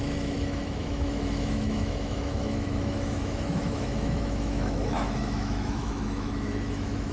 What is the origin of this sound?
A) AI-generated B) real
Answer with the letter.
A